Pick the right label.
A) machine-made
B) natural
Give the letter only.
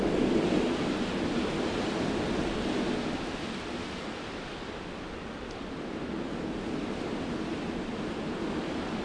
B